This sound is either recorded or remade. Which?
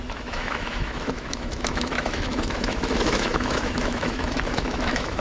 remade